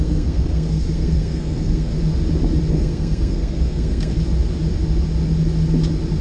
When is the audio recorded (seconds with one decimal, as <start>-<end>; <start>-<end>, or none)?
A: 1.9-2.7; 4.1-6.2